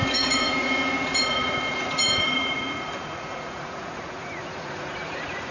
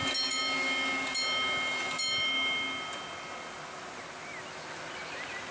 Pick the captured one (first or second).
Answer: second